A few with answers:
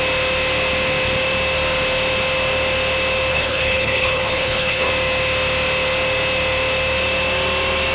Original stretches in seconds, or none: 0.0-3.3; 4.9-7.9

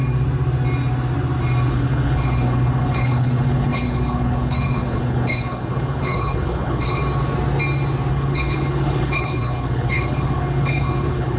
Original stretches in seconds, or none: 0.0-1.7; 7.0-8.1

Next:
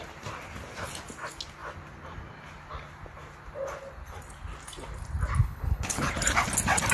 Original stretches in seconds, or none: 0.0-5.4; 6.1-6.9

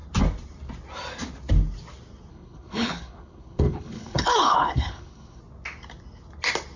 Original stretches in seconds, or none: 0.0-2.3; 5.4-6.8